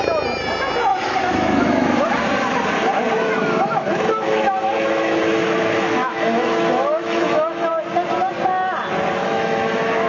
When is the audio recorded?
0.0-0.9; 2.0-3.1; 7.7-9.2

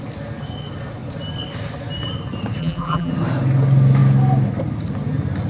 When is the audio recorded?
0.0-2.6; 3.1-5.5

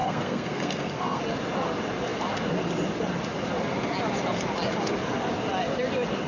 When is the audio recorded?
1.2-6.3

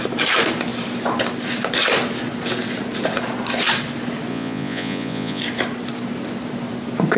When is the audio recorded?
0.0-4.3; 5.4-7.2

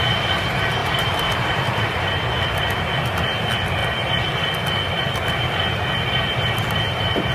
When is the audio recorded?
0.0-0.8; 2.0-3.8

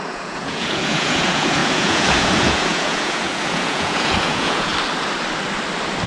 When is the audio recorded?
4.7-6.1

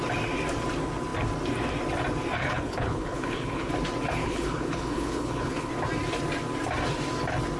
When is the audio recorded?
0.0-2.4; 3.7-4.2; 5.7-7.6

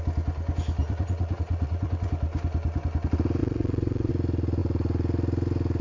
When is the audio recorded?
0.0-0.8; 2.1-3.4; 4.1-5.8